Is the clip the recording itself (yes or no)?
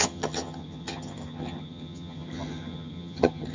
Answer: no